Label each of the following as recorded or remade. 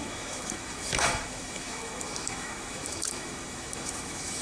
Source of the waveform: remade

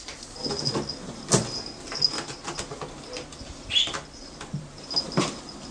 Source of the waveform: recorded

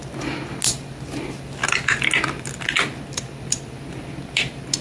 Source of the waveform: recorded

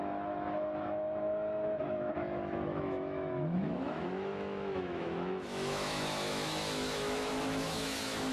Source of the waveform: remade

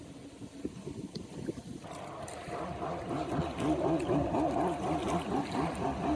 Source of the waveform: recorded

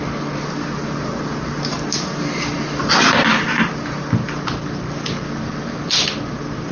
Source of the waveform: recorded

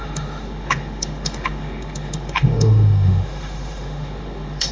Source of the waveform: remade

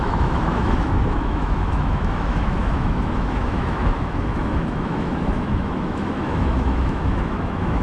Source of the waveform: remade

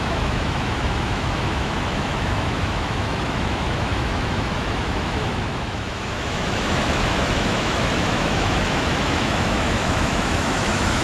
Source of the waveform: remade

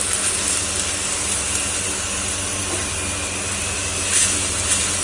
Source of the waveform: recorded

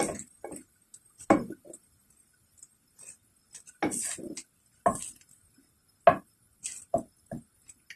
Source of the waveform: recorded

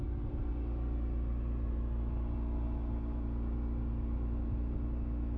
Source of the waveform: recorded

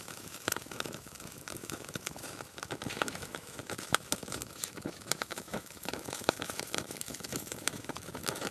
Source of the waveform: remade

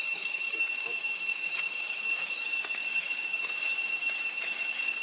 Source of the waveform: remade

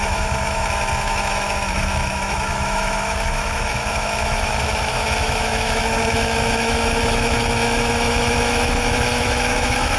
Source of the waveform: remade